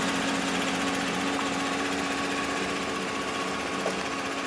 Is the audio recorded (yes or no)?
yes